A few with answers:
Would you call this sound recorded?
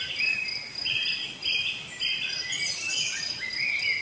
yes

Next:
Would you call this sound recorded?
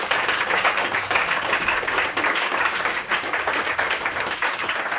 no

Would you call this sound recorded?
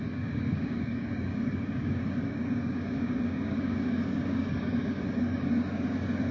no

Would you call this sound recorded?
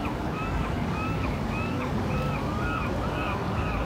no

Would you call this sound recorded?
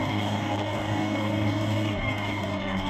no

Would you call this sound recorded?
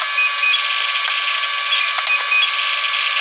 yes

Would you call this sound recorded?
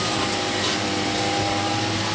yes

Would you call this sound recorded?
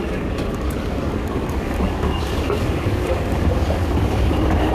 no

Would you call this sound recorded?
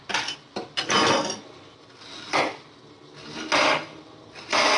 yes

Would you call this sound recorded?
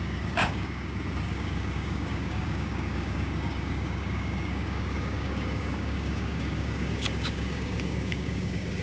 no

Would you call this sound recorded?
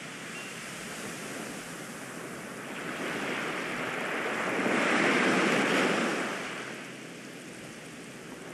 yes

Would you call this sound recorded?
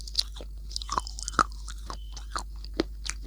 yes